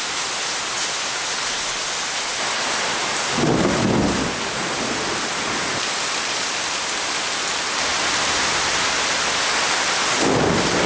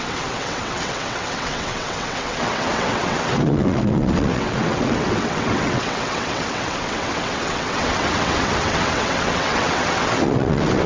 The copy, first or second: second